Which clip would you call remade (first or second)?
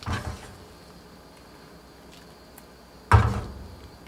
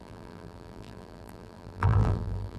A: second